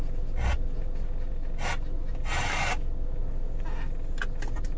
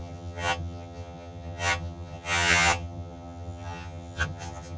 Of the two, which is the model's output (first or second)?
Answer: second